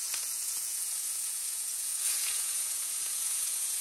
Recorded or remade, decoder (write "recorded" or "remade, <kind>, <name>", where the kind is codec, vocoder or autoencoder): remade, vocoder, Vocos